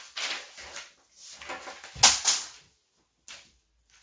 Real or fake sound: real